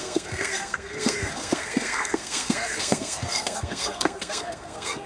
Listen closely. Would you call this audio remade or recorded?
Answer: remade